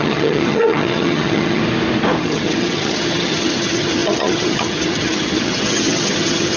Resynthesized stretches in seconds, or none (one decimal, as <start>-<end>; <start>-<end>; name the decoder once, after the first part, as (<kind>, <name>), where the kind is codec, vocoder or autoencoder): 0.0-1.6 (vocoder, HiFi-GAN); 2.2-6.6